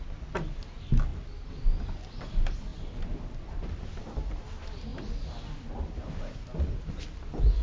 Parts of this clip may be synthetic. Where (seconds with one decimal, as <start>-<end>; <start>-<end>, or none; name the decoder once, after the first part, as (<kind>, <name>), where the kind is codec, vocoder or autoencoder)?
none